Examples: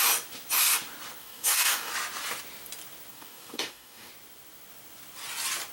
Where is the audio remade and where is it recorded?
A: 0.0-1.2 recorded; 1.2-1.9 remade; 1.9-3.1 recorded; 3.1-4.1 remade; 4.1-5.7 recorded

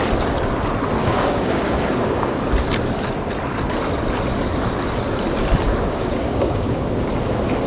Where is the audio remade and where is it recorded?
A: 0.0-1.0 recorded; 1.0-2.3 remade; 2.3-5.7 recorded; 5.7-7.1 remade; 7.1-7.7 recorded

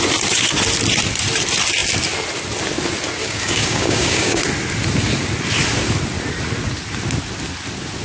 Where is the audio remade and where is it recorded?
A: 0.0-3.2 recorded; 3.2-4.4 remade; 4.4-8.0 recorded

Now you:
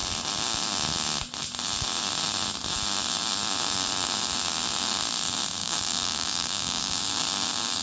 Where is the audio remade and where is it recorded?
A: 0.0-5.6 recorded; 5.6-7.0 remade; 7.0-7.8 recorded

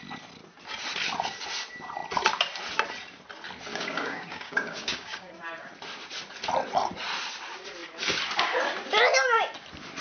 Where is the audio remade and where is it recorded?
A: 0.0-3.7 recorded; 3.7-5.3 remade; 5.3-10.0 recorded